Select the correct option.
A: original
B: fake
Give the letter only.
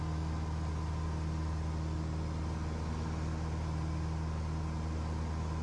A